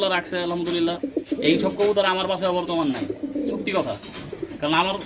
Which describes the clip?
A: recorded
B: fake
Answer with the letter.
A